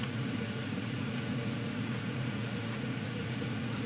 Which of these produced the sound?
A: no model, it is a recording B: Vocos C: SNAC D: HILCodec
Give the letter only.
B